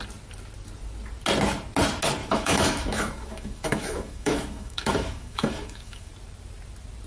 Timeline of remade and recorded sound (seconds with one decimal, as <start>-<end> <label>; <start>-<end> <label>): 0.0-2.2 recorded; 2.2-6.1 remade; 6.1-7.1 recorded